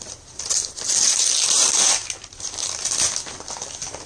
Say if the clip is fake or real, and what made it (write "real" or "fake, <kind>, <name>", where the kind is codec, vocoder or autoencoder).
real